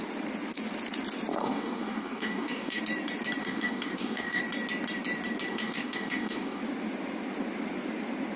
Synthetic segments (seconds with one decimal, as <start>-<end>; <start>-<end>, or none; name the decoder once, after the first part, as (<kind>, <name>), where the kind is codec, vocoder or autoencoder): 1.3-2.8 (codec, DAC); 3.4-4.4; 5.5-6.6